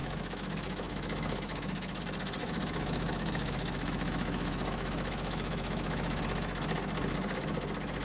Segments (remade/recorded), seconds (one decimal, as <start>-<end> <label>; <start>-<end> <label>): 0.0-2.0 remade; 2.0-2.4 recorded; 2.4-6.2 remade; 6.2-8.0 recorded